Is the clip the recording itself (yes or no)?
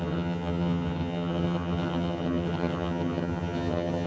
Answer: no